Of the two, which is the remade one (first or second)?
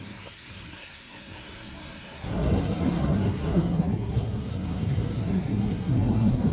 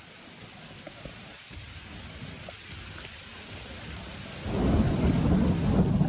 first